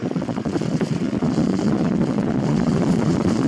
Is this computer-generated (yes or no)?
yes